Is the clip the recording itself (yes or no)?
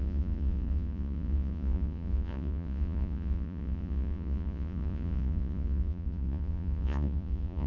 no